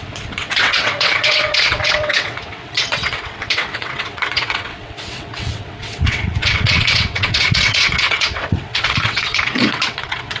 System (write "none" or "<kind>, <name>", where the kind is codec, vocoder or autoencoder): vocoder, WaveNeXt